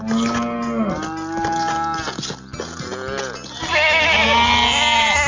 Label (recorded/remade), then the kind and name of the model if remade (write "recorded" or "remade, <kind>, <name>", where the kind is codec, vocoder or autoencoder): recorded